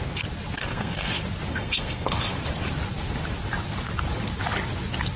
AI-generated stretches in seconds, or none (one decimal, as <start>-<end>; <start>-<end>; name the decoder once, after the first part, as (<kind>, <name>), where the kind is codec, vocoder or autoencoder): 0.6-1.1 (codec, SNAC); 1.5-2.2